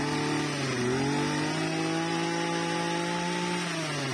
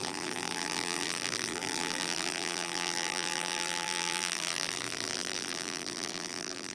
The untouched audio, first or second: first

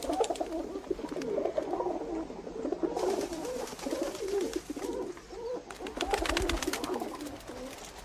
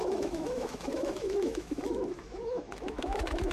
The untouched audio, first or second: first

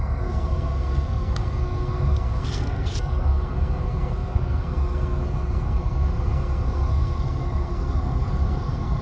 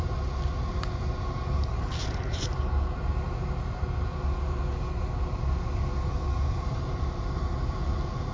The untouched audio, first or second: second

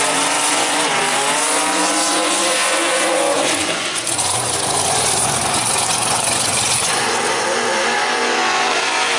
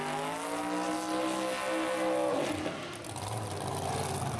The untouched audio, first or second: second